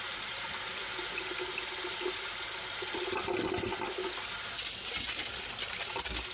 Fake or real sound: real